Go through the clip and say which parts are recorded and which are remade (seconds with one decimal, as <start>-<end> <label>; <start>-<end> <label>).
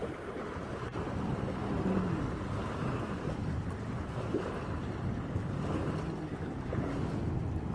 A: 0.0-1.7 remade; 1.7-2.6 recorded; 2.6-4.5 remade; 4.5-6.3 recorded; 6.3-7.0 remade; 7.0-7.7 recorded